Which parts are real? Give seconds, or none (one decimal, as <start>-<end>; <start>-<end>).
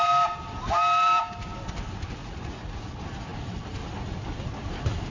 0.0-2.2; 2.8-5.1